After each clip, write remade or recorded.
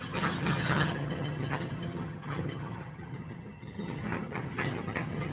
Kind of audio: remade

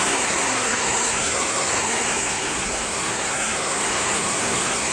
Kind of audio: remade